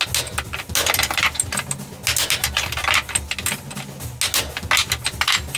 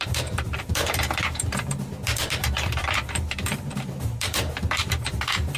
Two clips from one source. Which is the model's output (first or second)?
second